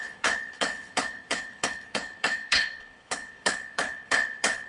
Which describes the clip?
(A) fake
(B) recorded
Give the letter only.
A